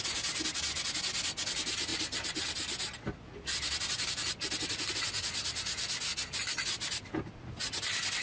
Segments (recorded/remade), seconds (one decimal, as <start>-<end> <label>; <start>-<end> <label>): 0.0-8.2 recorded